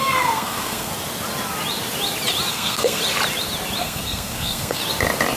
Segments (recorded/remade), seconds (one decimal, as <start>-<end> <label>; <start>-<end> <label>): 0.0-0.9 remade; 0.9-2.5 recorded; 2.5-3.0 remade; 3.0-3.8 recorded; 3.8-4.8 remade; 4.8-5.4 recorded